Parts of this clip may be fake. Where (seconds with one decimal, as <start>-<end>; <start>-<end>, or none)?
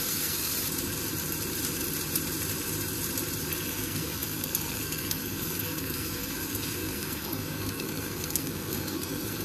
0.0-0.5; 3.7-9.4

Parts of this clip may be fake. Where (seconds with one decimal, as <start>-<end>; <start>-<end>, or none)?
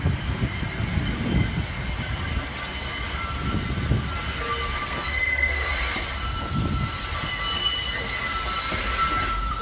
4.8-5.7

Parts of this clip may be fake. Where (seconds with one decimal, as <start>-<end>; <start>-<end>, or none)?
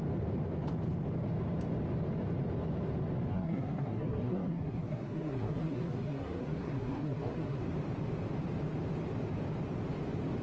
3.3-7.6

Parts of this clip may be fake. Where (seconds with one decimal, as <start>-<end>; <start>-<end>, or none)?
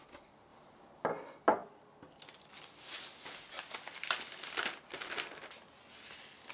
none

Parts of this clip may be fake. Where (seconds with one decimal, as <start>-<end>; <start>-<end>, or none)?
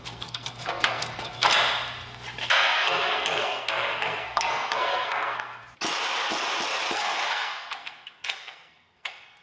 0.0-1.5; 2.4-5.6; 6.9-9.4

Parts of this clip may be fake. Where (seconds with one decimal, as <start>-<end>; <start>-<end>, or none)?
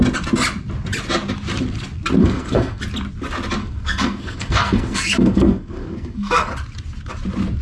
2.2-2.8; 3.6-6.5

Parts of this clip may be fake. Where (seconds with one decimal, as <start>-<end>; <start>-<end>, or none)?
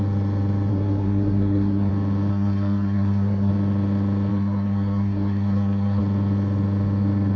0.7-1.9; 2.3-3.5; 4.3-6.0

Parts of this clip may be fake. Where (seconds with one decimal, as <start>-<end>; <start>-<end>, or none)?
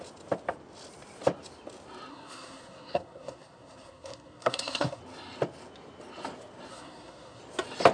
2.1-5.0; 6.7-7.4